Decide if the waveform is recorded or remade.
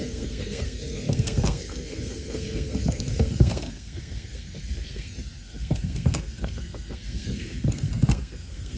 remade